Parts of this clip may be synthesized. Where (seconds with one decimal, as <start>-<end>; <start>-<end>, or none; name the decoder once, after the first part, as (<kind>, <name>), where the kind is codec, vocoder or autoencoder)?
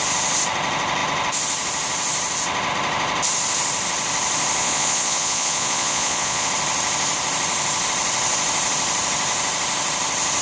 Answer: 4.6-6.5 (vocoder, Vocos)